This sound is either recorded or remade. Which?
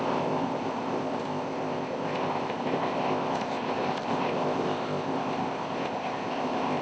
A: remade